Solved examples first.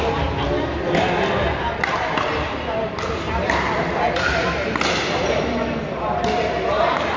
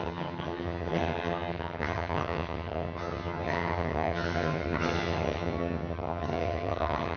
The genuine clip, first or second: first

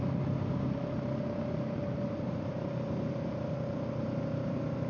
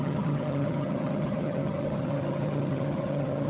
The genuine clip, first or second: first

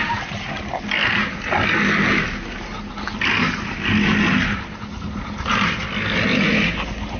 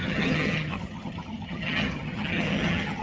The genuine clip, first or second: first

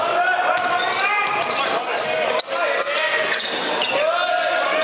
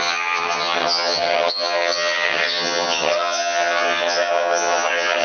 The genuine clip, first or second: first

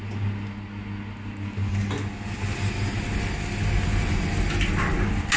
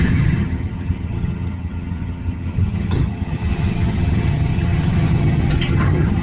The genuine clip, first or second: first